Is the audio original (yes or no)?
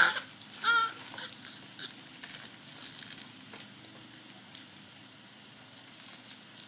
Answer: yes